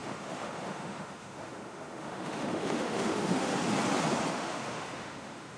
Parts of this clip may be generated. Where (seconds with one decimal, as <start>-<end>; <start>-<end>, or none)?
0.0-3.5; 4.3-5.6